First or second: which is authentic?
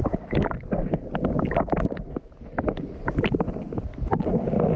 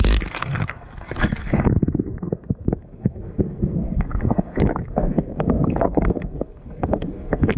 first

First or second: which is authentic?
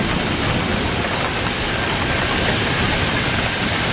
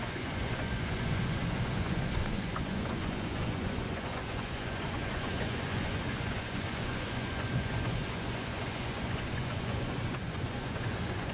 first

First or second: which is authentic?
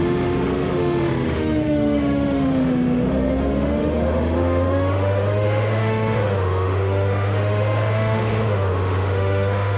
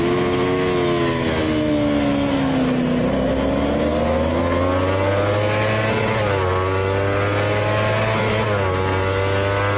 second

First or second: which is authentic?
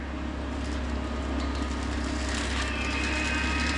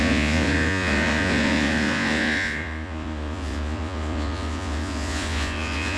first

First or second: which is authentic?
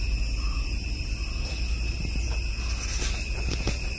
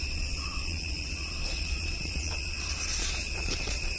first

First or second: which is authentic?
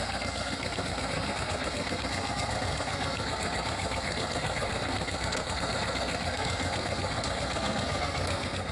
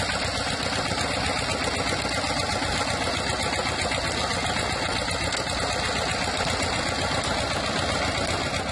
second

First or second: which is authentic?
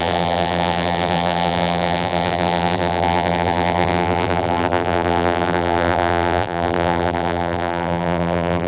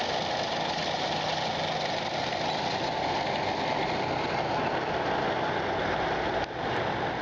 second